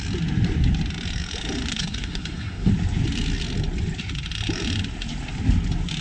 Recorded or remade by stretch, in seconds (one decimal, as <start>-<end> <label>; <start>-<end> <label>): 0.0-1.7 recorded; 1.7-2.7 remade; 2.7-6.0 recorded